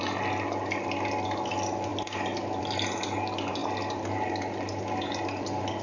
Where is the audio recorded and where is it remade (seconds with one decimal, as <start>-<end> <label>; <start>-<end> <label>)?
0.0-5.8 recorded